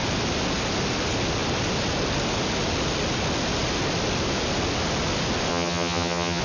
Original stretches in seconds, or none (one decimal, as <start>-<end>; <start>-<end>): 0.0-5.5